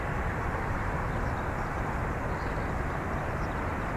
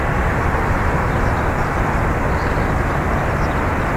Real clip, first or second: second